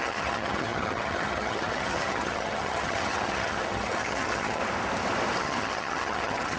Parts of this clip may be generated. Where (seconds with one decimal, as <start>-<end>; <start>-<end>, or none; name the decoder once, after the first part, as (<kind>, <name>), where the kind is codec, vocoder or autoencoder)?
0.0-4.6 (vocoder, HiFi-GAN); 5.4-6.6